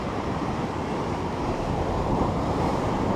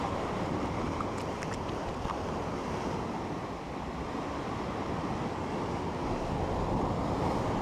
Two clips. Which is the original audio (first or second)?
second